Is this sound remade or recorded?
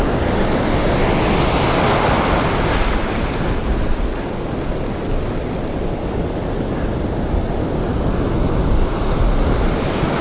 recorded